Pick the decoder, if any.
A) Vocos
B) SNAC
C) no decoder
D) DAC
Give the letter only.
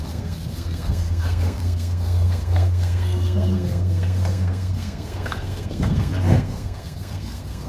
B